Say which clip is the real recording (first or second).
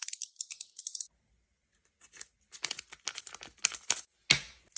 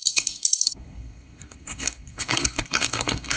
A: first